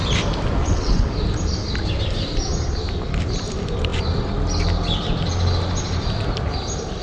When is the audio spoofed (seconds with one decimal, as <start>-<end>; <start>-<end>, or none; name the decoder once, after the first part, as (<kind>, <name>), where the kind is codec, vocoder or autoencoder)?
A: 0.6-1.1 (vocoder, WaveNeXt)